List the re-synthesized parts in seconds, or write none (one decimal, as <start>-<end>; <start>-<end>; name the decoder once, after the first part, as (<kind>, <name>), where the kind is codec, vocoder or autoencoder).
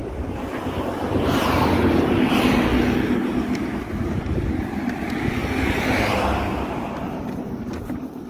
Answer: 0.6-2.7 (vocoder, BigVGAN v2); 4.1-8.3